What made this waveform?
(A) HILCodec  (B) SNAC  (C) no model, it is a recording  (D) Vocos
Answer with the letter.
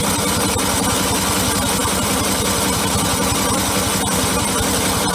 C